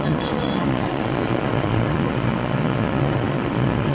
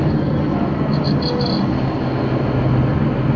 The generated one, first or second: first